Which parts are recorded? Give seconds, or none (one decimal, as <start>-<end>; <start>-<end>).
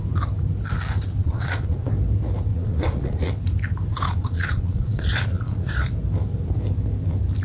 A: 0.0-1.2; 1.9-2.5; 3.3-3.9; 5.9-7.4